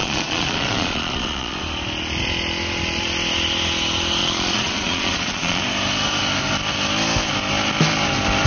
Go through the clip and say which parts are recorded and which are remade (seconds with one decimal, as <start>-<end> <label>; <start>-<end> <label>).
0.0-1.6 remade; 1.6-4.2 recorded; 4.2-5.6 remade; 5.6-8.5 recorded